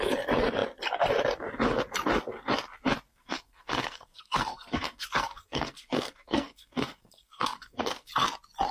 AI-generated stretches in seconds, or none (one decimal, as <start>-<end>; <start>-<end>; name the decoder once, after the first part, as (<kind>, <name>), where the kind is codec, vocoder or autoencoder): 3.1-8.1 (codec, SNAC)

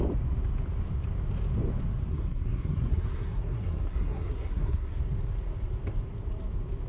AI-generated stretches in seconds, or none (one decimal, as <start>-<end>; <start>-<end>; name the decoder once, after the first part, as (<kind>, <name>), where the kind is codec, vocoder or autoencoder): 2.1-5.0 (codec, SNAC)